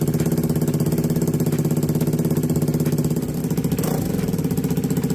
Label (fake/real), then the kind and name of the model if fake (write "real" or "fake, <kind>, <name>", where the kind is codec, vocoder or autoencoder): real